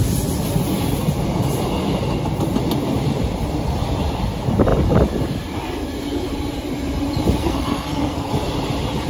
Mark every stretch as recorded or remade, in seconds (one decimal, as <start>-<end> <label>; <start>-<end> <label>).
0.0-7.4 recorded; 7.4-8.3 remade; 8.3-9.1 recorded